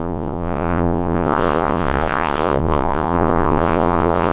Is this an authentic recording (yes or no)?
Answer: no